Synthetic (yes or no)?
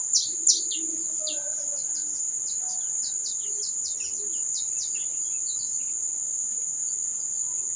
yes